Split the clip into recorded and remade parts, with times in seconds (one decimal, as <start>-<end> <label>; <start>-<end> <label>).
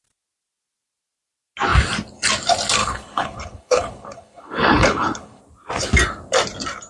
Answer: 0.0-2.8 recorded; 2.8-5.4 remade; 5.4-6.9 recorded